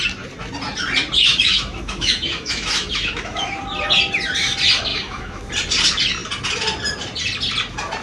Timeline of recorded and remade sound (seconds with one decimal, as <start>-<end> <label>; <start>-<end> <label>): 0.0-1.3 recorded; 1.3-3.6 remade; 3.6-4.9 recorded; 4.9-5.5 remade; 5.5-8.0 recorded